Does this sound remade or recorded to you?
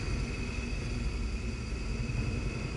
recorded